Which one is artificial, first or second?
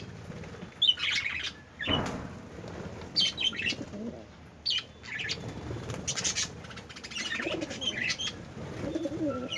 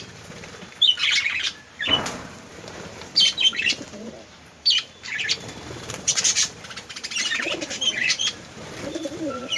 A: second